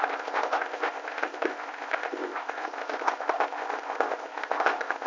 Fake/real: fake